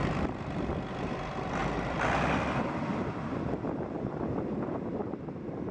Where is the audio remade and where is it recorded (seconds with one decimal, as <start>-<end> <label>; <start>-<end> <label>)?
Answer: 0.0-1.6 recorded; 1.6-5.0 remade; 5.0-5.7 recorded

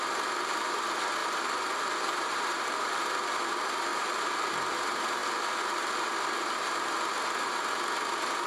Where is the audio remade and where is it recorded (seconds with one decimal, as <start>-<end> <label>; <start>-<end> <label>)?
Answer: 0.0-1.2 recorded; 1.2-3.1 remade; 3.1-3.9 recorded; 3.9-4.5 remade; 4.5-8.5 recorded

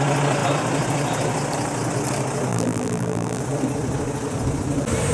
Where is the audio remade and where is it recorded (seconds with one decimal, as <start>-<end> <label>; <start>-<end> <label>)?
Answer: 0.0-2.5 recorded; 2.5-3.4 remade; 3.4-5.1 recorded

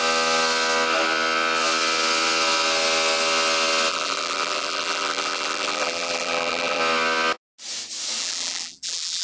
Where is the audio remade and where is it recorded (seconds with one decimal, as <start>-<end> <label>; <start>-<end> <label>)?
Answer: 0.0-3.9 recorded; 3.9-6.8 remade; 6.8-8.2 recorded; 8.2-9.2 remade